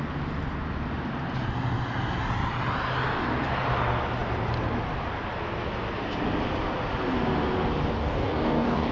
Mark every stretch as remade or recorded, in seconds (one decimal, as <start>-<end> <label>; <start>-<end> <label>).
0.0-8.0 recorded; 8.0-8.9 remade